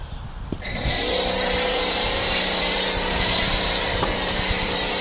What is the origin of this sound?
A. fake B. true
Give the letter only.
A